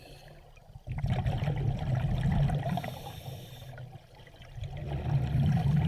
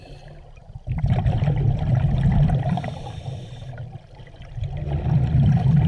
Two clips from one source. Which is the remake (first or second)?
second